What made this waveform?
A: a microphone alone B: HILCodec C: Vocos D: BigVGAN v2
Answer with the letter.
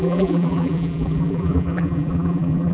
D